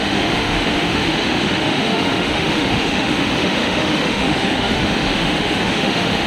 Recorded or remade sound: remade